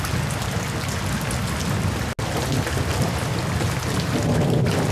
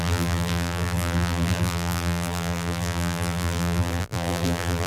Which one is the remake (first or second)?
second